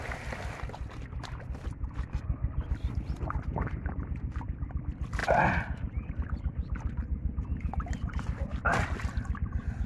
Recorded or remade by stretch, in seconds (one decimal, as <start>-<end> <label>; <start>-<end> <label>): 0.0-9.9 recorded